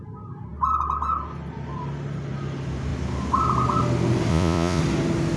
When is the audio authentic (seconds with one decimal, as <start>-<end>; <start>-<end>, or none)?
0.0-4.3; 4.8-5.4